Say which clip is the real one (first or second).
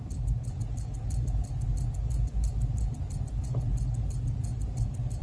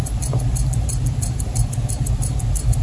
first